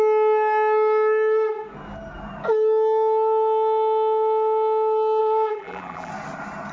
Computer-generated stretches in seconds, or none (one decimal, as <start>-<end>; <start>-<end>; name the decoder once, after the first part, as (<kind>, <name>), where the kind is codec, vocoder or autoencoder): 5.2-6.1 (vocoder, BigVGAN v2)